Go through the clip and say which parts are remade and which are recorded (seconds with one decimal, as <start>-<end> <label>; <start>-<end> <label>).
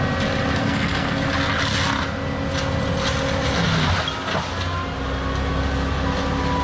0.0-0.6 recorded; 0.6-1.3 remade; 1.3-6.6 recorded